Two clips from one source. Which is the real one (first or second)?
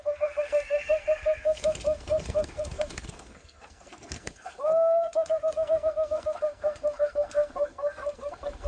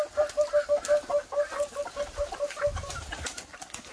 second